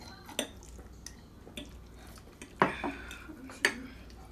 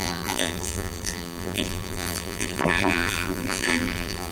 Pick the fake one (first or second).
second